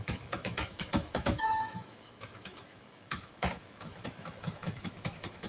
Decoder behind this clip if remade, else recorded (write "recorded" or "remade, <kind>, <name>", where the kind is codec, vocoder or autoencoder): remade, autoencoder, DAC-VAE